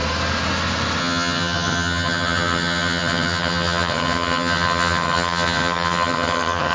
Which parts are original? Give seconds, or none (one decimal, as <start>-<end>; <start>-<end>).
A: 0.0-1.0